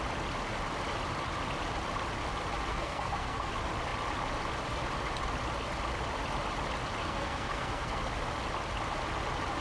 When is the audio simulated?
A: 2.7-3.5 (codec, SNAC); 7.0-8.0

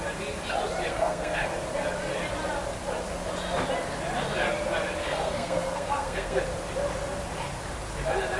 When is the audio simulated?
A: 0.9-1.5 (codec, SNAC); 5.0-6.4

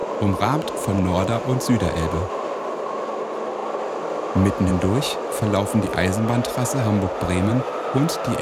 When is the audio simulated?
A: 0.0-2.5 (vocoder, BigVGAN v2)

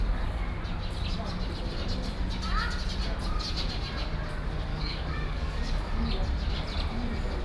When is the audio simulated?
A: 4.7-6.1 (codec, DAC)

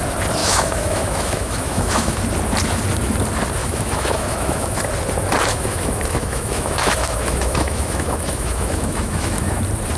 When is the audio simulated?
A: 0.4-2.2 (autoencoder, DAC-VAE); 3.6-4.8; 5.5-9.6

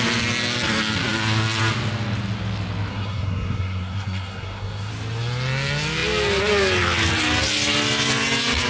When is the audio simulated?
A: 2.9-4.9 (codec, SNAC)

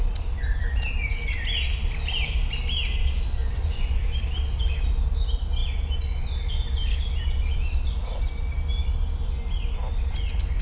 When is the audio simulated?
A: 3.4-4.0 (vocoder, Vocos)

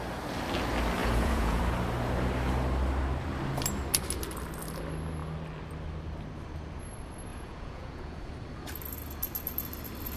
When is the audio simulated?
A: 1.0-1.6 (vocoder, Vocos); 7.3-8.3